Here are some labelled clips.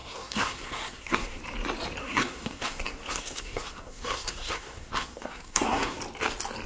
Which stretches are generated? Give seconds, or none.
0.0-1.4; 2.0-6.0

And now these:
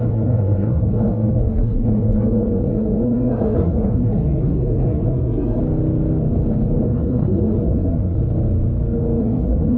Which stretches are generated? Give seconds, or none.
0.0-5.6; 6.8-8.2; 9.2-9.8

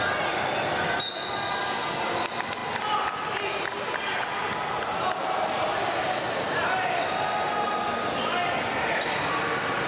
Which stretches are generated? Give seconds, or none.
none

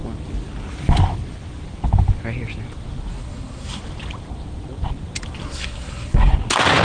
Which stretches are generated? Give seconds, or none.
3.1-3.8; 5.4-6.3

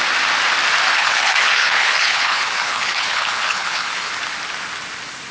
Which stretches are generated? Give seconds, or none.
0.9-4.1